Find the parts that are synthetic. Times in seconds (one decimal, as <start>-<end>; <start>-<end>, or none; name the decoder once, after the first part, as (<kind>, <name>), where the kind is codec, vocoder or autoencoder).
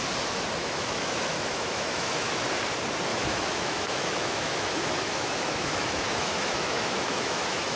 0.6-2.4 (autoencoder, DAC-VAE); 3.1-7.8